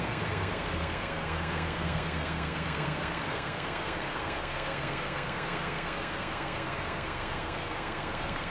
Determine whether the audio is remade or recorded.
remade